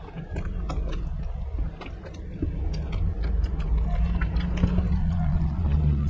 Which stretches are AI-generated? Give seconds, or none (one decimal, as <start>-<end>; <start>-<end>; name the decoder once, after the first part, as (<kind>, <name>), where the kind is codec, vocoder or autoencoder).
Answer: 5.0-6.1 (vocoder, Vocos)